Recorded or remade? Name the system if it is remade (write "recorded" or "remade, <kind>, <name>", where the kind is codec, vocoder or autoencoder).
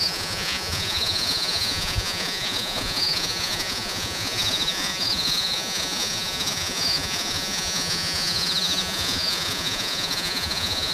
remade, vocoder, Vocos